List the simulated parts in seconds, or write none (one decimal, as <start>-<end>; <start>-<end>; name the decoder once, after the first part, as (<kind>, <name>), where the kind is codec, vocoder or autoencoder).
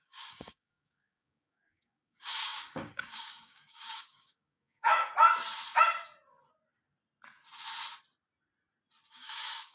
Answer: 0.0-5.1 (codec, DAC); 9.1-9.7